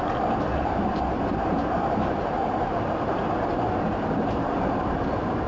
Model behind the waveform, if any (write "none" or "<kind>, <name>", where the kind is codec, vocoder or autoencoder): vocoder, BigVGAN v2